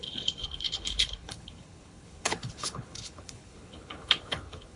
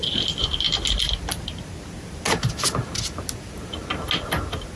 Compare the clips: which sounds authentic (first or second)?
second